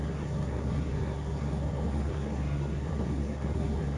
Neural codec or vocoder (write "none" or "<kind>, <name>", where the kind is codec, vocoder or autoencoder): codec, SNAC